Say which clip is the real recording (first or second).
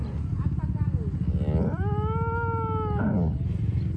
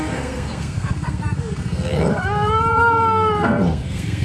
first